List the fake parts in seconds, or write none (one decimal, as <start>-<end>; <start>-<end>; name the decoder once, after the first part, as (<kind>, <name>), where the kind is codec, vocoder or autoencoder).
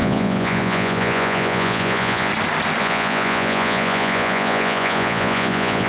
0.0-2.3 (vocoder, Vocos); 2.8-5.9